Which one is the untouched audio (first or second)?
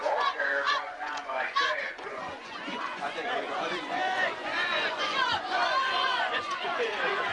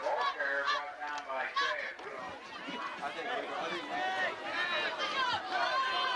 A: second